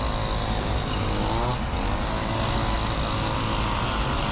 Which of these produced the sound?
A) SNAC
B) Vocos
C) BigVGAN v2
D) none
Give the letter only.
D